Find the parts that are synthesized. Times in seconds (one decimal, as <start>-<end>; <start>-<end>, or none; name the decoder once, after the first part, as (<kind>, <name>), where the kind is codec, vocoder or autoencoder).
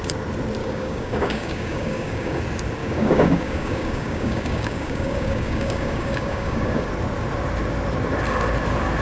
0.6-2.4 (codec, DAC); 2.8-6.9